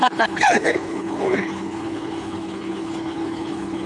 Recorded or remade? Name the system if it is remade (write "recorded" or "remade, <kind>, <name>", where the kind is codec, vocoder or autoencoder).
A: remade, codec, HILCodec